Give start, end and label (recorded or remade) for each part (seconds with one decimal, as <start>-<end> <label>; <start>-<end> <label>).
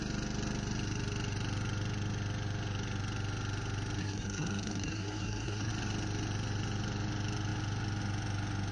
0.0-4.0 recorded; 4.0-5.7 remade; 5.7-8.7 recorded